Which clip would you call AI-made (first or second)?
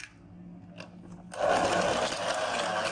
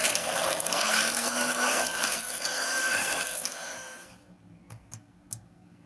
second